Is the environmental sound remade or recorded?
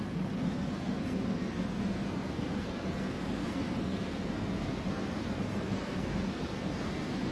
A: remade